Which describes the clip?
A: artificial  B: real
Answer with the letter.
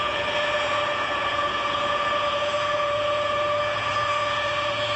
A